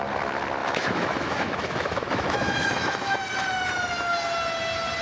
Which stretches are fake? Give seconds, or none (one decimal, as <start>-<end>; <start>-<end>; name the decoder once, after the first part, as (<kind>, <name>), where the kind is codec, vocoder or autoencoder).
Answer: 0.6-3.2 (autoencoder, DAC-VAE)